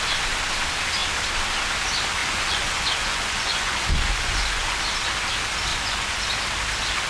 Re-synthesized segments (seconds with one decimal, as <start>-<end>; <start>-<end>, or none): 2.2-4.8; 5.7-6.2